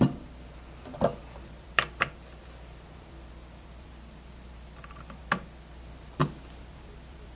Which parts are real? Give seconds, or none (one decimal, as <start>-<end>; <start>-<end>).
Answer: 0.0-1.2; 5.2-6.2